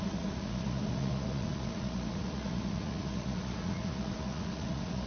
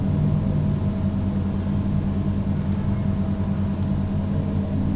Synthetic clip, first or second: first